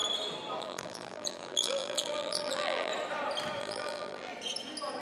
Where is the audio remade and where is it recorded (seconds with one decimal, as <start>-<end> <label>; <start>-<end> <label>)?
0.0-0.6 recorded; 0.6-2.9 remade; 2.9-3.6 recorded; 3.6-4.3 remade; 4.3-5.0 recorded